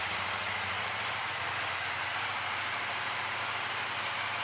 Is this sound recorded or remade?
recorded